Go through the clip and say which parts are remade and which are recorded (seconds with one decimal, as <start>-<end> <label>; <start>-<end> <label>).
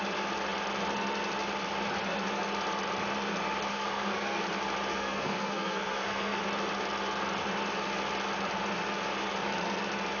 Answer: 0.0-3.7 recorded; 3.7-4.4 remade; 4.4-4.9 recorded; 4.9-6.4 remade; 6.4-10.2 recorded